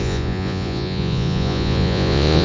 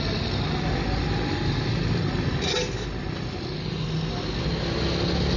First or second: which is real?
second